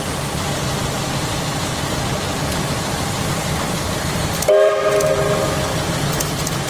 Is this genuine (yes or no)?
yes